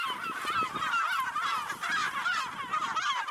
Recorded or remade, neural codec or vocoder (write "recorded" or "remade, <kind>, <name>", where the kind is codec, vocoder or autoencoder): recorded